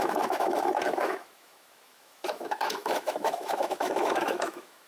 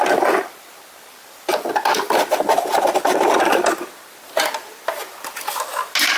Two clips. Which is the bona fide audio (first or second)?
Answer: second